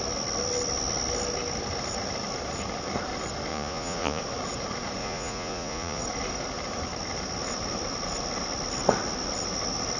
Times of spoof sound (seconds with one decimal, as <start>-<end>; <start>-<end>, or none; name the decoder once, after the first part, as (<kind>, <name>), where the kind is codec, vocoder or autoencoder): 3.5-4.2 (vocoder, Vocos); 5.0-6.0